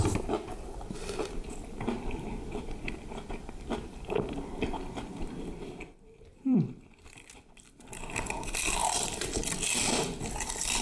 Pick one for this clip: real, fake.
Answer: fake